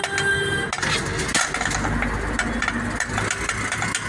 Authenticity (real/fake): real